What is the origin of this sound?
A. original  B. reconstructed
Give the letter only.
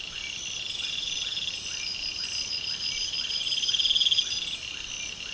A